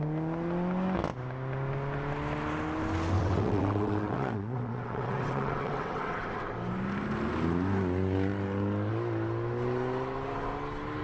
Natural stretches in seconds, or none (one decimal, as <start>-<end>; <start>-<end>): 0.0-3.2; 6.2-11.0